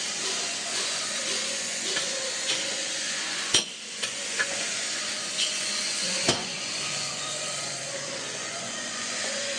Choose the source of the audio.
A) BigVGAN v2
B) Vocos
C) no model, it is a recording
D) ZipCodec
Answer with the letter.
B